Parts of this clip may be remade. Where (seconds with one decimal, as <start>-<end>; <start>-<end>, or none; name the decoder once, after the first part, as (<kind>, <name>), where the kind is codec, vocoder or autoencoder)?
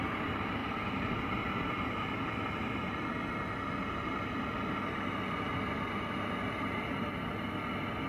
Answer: 0.6-3.1 (vocoder, BigVGAN v2)